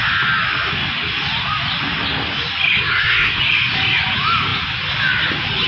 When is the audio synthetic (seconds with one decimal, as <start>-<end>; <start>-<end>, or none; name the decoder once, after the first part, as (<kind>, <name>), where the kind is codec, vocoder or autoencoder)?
2.9-3.4 (codec, SNAC)